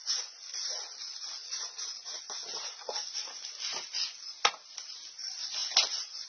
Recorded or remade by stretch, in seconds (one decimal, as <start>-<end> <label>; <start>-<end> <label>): 0.0-1.4 recorded; 1.4-2.2 remade; 2.2-6.3 recorded